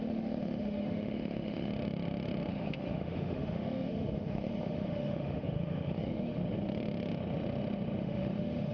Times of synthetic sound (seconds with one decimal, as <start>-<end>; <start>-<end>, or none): 0.0-1.7; 2.5-6.4; 8.0-8.7